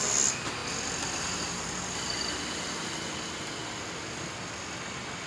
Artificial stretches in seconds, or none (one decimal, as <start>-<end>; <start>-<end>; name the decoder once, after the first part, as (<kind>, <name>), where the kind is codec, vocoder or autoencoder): none